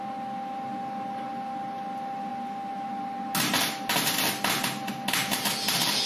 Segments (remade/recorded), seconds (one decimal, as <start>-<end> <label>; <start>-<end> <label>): 0.0-6.1 recorded